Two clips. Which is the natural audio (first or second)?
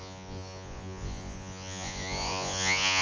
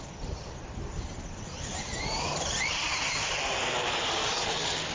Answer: second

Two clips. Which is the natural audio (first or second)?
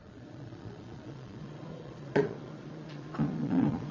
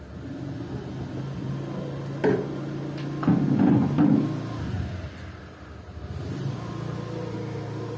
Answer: second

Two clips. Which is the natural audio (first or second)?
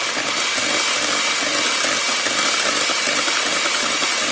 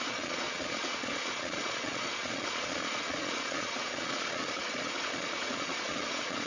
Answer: first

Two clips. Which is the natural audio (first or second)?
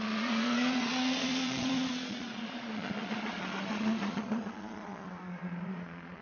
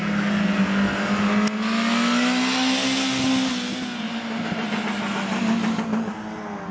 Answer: second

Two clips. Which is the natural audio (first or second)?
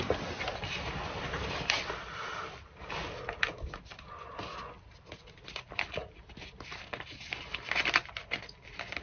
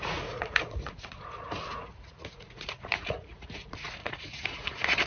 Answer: first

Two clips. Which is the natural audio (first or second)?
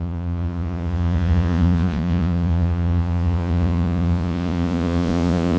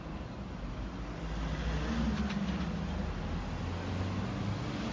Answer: second